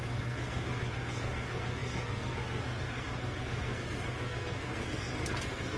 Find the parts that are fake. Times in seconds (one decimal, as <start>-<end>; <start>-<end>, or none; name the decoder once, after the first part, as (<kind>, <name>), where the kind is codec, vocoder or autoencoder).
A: 0.0-5.8 (codec, SNAC)